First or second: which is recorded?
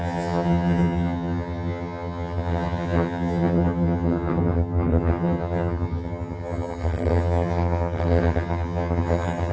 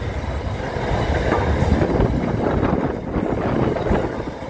second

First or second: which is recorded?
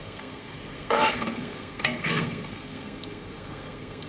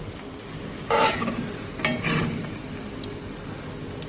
second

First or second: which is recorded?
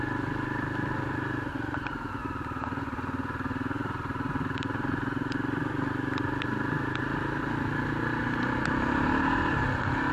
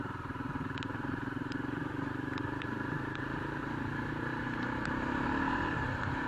first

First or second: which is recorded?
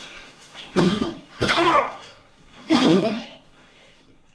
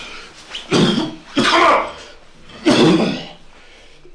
second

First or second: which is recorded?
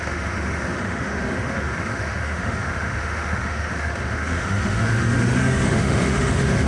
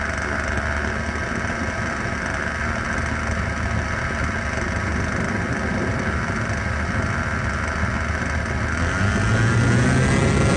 second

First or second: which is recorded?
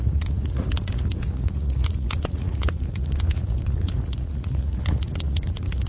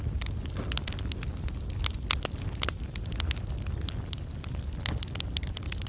second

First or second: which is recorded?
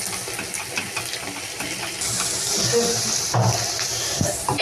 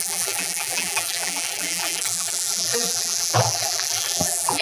first